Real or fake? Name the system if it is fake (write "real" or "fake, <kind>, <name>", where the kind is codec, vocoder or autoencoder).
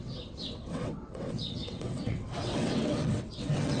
fake, vocoder, WaveNeXt